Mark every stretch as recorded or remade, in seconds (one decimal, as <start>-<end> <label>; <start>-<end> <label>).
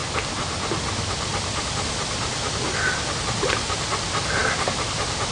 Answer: 0.0-3.2 remade; 3.2-4.4 recorded; 4.4-5.3 remade